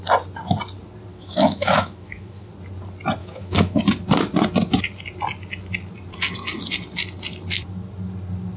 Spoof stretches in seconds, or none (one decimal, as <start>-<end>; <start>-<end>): 1.1-2.5; 3.2-3.8